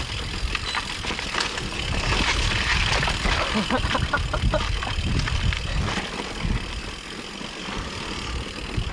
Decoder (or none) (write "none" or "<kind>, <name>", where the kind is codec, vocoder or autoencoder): none